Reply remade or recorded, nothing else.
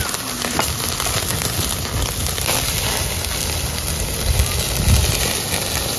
recorded